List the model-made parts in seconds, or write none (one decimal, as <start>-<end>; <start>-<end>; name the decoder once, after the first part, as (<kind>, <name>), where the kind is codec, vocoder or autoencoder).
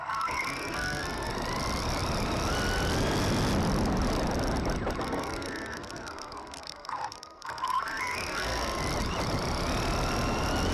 0.0-1.3 (codec, SNAC); 5.0-8.8